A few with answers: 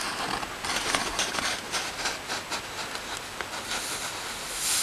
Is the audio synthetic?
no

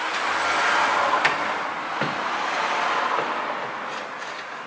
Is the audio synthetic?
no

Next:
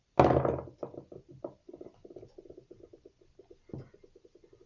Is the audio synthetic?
no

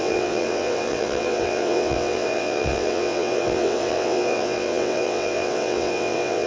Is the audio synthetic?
yes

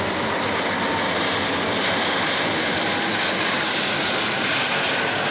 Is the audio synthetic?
no